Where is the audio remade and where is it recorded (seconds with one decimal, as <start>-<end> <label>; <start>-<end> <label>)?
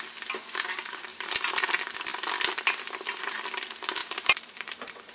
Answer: 0.0-1.1 recorded; 1.1-1.7 remade; 1.7-4.0 recorded; 4.0-5.1 remade